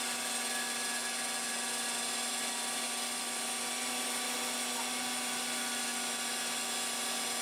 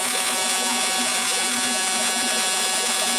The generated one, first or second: second